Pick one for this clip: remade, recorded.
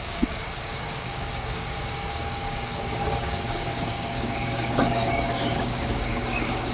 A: remade